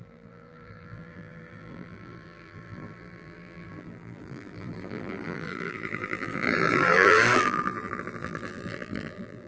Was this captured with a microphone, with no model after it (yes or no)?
no